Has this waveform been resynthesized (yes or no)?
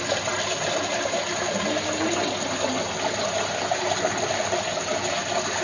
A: no